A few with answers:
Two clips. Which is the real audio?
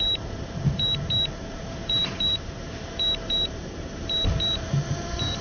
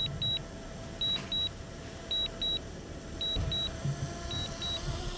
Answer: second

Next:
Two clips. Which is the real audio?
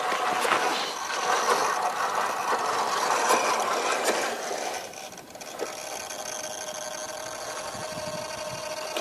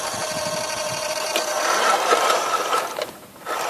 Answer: first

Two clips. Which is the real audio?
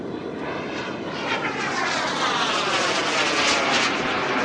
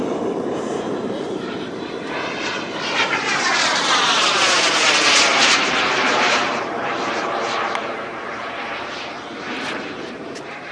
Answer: first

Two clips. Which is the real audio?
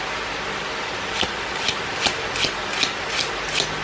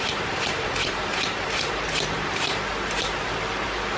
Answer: first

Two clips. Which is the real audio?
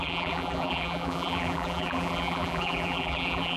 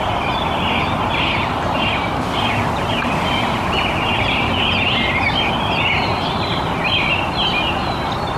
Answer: second